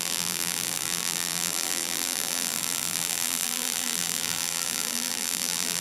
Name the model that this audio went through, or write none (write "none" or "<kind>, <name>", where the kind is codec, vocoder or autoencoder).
vocoder, BigVGAN v2